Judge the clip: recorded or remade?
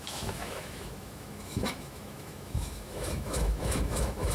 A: remade